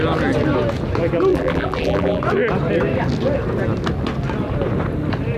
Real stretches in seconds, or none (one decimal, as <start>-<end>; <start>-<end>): 0.0-1.3; 2.2-5.4